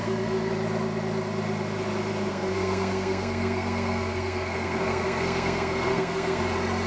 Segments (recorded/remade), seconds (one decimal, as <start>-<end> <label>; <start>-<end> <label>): 0.0-0.5 remade; 0.5-2.3 recorded; 2.3-6.4 remade; 6.4-6.9 recorded